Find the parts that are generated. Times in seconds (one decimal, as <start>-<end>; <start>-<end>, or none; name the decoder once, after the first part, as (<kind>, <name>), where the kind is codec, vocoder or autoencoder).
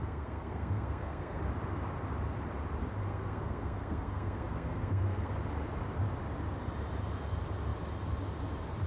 0.0-1.5 (codec, SNAC); 3.0-5.3